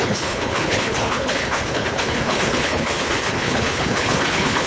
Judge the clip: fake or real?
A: fake